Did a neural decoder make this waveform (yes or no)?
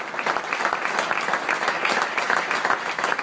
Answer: no